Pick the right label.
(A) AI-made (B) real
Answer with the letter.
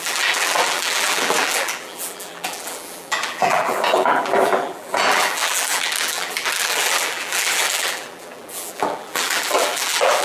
A